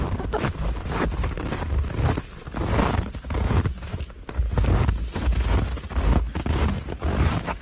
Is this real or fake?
real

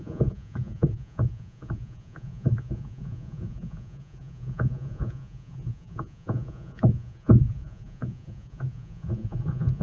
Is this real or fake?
fake